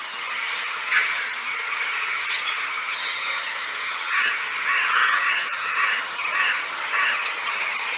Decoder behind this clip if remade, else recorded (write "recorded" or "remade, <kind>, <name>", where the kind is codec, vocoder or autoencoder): remade, vocoder, HiFi-GAN